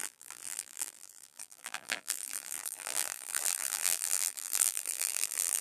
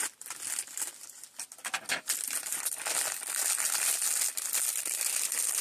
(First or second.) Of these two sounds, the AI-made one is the first